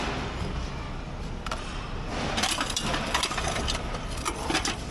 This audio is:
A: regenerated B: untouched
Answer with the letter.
A